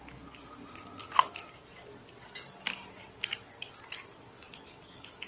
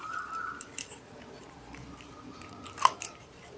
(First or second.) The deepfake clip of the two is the second